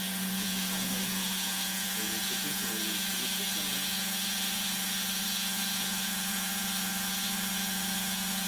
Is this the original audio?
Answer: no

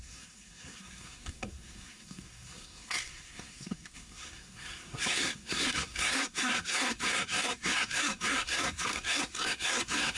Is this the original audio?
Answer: no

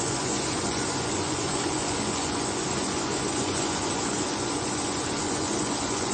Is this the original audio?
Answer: no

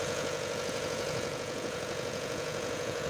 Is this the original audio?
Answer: no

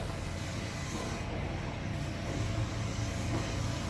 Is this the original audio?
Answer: no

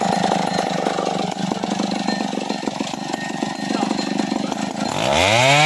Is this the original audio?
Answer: yes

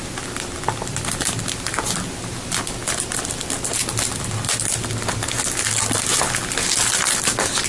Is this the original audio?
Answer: yes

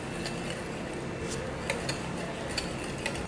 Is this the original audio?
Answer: yes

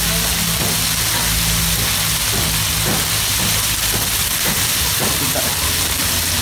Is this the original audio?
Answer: yes